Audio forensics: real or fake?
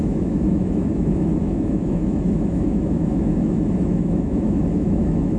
fake